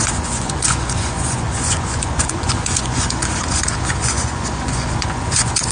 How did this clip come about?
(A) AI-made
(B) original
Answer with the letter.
A